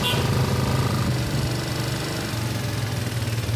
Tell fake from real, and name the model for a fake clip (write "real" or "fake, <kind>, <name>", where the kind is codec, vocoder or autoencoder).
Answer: real